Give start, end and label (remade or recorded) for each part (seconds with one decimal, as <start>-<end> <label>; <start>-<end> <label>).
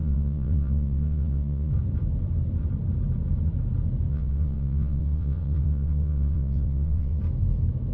0.0-1.7 remade; 1.7-4.1 recorded; 4.1-7.2 remade; 7.2-7.9 recorded